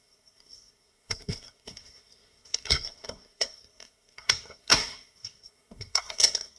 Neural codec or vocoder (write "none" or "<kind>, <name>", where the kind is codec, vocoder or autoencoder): codec, SNAC